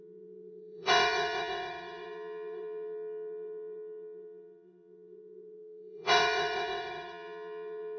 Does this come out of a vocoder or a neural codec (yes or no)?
yes